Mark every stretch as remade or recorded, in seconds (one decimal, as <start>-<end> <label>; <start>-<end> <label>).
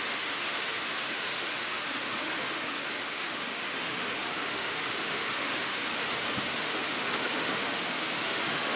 0.0-8.8 remade